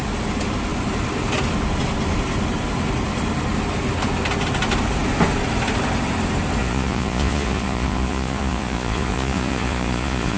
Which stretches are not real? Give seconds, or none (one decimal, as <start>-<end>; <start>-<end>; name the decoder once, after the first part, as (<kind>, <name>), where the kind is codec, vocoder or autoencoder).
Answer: 6.6-10.4 (vocoder, Vocos)